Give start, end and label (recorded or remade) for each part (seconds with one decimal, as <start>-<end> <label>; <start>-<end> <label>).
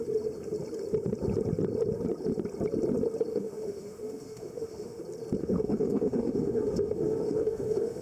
0.0-3.3 recorded; 3.3-5.0 remade; 5.0-5.4 recorded; 5.4-8.0 remade